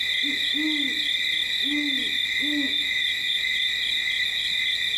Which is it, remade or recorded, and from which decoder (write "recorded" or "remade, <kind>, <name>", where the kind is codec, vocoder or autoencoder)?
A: recorded